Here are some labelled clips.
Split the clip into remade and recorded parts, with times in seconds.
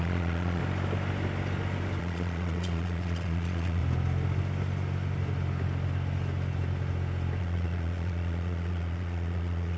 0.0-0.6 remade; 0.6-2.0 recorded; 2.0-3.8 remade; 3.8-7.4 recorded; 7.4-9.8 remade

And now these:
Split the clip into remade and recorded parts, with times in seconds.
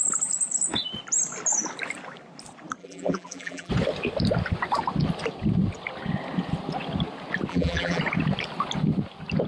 0.0-2.8 recorded; 2.8-3.7 remade; 3.7-7.5 recorded; 7.5-8.0 remade; 8.0-9.5 recorded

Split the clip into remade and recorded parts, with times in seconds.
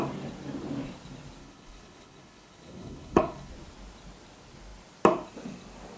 0.0-1.4 recorded; 1.4-3.5 remade; 3.5-6.0 recorded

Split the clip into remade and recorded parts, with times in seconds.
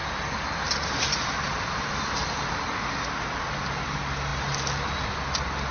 0.0-5.7 recorded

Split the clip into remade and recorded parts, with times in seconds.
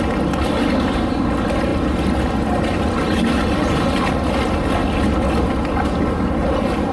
0.0-1.7 recorded; 1.7-4.1 remade; 4.1-4.8 recorded; 4.8-5.4 remade; 5.4-6.9 recorded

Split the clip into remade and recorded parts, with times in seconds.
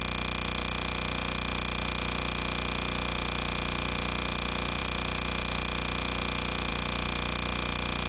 0.0-8.1 recorded